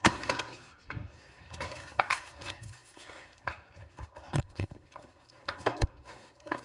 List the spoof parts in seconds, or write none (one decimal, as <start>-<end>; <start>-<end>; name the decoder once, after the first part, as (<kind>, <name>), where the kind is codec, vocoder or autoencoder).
0.0-6.6 (codec, SNAC)